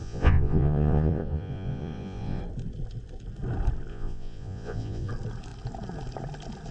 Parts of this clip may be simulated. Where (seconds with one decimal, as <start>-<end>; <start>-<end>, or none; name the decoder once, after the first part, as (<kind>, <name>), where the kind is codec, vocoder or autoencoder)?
0.0-2.4 (vocoder, Vocos); 3.9-5.1